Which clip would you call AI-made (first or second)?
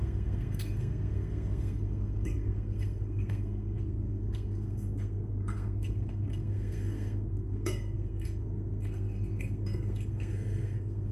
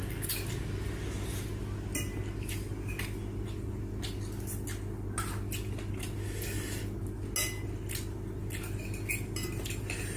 first